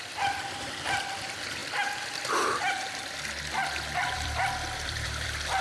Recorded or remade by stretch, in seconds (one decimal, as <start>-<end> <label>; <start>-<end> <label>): 0.0-1.6 remade; 1.6-4.0 recorded; 4.0-5.6 remade